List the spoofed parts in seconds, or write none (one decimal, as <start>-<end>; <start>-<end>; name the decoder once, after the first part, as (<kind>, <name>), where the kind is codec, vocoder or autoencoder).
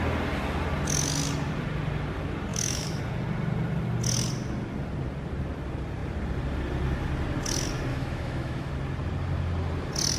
2.5-3.0 (autoencoder, DAC-VAE); 7.9-8.7